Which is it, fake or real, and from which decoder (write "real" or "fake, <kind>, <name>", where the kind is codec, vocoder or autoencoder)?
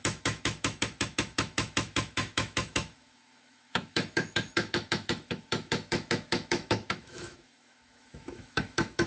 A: fake, autoencoder, DAC-VAE